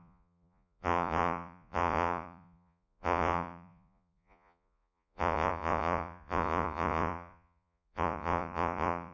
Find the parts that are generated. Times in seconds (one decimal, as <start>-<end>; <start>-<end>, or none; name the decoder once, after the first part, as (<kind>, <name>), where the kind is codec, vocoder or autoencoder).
0.0-9.1 (vocoder, Vocos)